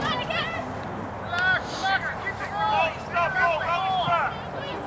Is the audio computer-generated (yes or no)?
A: no